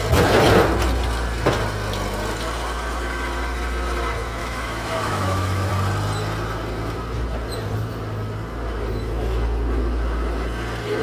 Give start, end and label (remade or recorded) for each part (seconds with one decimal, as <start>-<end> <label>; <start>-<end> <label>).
0.0-4.4 recorded; 4.4-5.7 remade; 5.7-11.0 recorded